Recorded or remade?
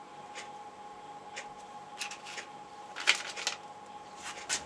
recorded